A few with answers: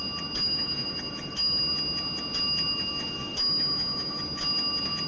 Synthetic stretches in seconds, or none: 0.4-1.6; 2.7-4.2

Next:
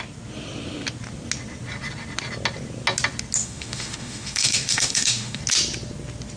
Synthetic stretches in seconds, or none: 3.4-5.4

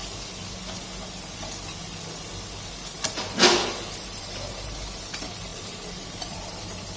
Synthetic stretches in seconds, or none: 4.2-7.0

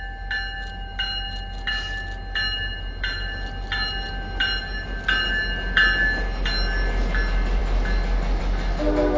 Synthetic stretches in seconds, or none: none

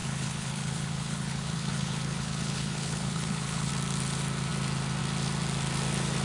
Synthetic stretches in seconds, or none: 0.0-3.7